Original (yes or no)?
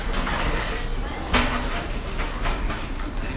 yes